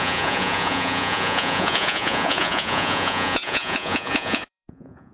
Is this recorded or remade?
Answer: remade